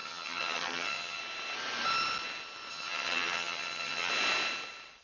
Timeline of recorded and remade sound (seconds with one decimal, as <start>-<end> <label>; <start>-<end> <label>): 0.0-1.2 remade; 1.2-2.7 recorded; 2.7-4.1 remade; 4.1-5.0 recorded